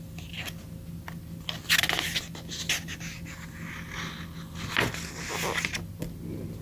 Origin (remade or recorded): recorded